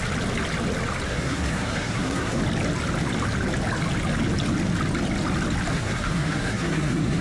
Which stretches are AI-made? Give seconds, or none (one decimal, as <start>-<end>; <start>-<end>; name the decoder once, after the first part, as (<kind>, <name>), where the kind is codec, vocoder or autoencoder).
1.1-2.4 (codec, SNAC); 5.7-7.2